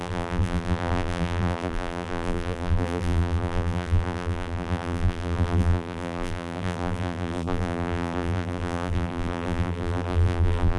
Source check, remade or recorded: remade